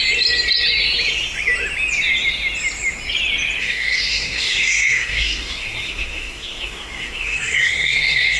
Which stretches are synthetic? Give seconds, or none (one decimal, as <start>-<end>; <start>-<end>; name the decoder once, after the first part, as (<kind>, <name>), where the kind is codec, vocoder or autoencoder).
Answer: 3.6-8.4 (codec, SNAC)